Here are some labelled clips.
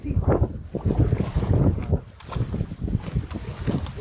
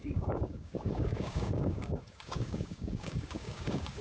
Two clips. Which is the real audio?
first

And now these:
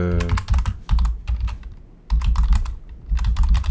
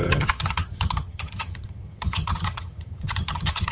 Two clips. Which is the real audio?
first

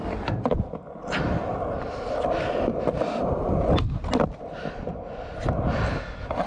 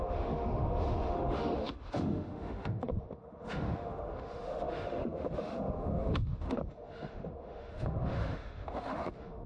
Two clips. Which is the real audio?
first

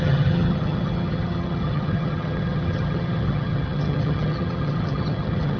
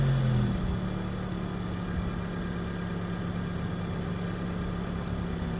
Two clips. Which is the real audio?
second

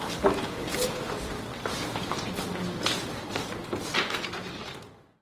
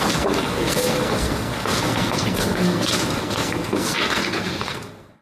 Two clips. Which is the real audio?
first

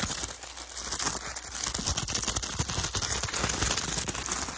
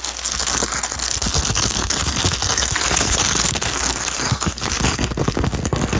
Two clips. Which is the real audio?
first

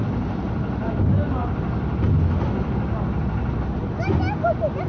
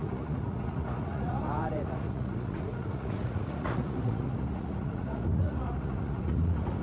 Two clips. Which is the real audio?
first